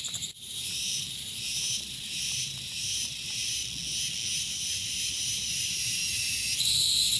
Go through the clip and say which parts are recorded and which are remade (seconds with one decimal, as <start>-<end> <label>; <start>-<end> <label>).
0.0-3.6 remade; 3.6-4.4 recorded; 4.4-6.0 remade; 6.0-6.6 recorded; 6.6-7.2 remade